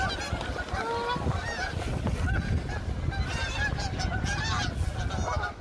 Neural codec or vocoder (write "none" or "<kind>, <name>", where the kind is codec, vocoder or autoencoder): none